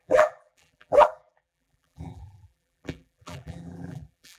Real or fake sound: fake